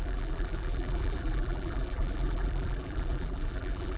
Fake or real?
fake